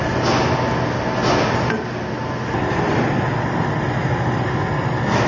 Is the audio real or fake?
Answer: real